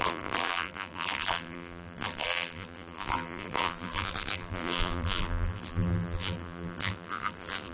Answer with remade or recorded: remade